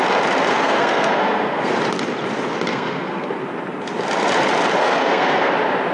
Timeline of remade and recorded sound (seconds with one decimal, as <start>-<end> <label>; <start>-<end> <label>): 0.0-0.5 recorded; 0.5-1.7 remade; 1.7-2.7 recorded; 2.7-3.3 remade; 3.3-4.8 recorded; 4.8-5.5 remade; 5.5-5.9 recorded